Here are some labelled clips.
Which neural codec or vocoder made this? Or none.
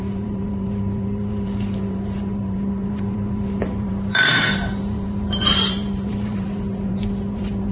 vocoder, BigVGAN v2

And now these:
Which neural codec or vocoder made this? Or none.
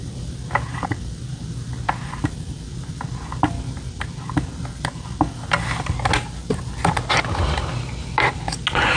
none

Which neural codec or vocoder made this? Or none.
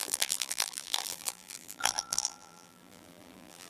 vocoder, BigVGAN v2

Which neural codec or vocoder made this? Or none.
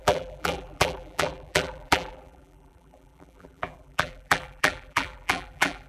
vocoder, BigVGAN v2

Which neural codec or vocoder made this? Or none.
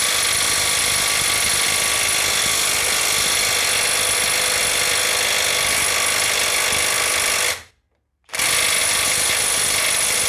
none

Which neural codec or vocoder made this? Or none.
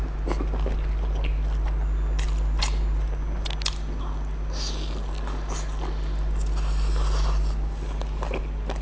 none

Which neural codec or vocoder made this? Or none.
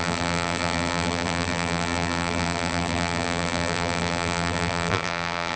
vocoder, BigVGAN v2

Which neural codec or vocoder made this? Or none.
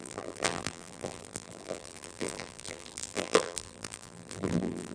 vocoder, BigVGAN v2